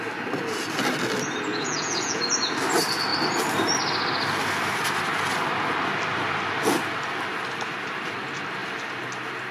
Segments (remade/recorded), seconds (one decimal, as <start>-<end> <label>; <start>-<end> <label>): 0.0-1.5 recorded; 1.5-2.2 remade; 2.2-9.5 recorded